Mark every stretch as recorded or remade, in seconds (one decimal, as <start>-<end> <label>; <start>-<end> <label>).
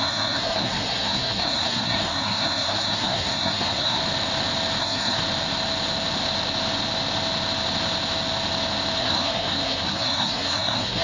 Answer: 0.0-4.0 remade; 4.0-4.8 recorded; 4.8-5.2 remade; 5.2-9.0 recorded; 9.0-11.0 remade